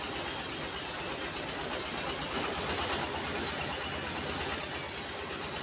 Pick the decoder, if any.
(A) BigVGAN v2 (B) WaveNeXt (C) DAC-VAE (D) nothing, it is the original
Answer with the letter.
D